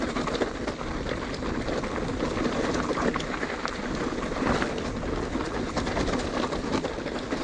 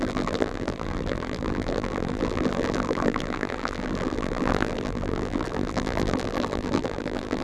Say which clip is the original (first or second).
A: first